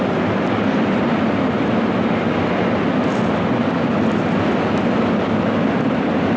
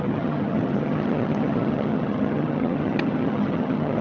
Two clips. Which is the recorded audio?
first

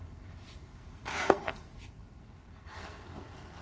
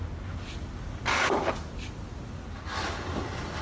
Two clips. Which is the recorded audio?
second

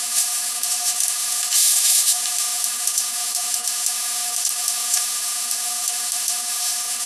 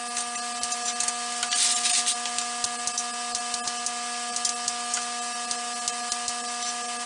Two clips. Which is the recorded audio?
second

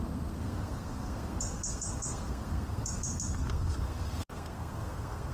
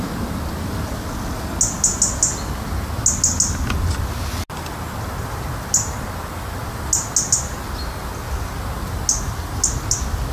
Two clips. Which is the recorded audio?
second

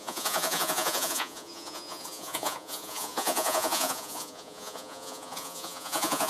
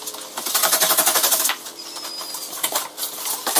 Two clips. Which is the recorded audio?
second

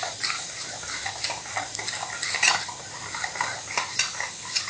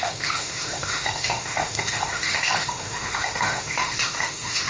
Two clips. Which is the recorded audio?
first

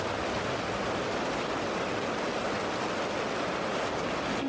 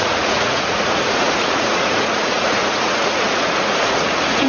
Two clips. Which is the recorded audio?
first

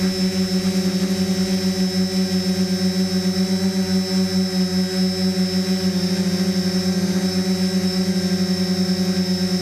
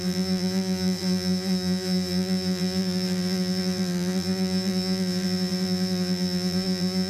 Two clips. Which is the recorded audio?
first